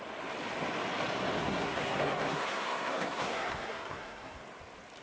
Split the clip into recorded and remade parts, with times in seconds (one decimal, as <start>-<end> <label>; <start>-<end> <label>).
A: 0.0-1.4 recorded; 1.4-4.4 remade; 4.4-5.0 recorded